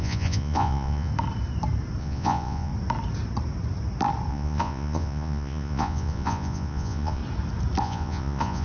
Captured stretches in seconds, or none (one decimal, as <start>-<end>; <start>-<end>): 1.1-2.0; 2.7-4.3; 7.2-7.8